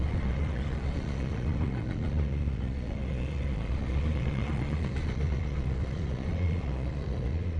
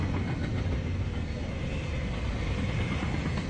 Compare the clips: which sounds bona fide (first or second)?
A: second